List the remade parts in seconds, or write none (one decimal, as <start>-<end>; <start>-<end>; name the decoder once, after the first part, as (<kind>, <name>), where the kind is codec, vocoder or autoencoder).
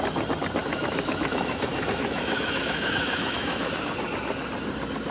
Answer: 0.6-3.7 (autoencoder, DAC-VAE)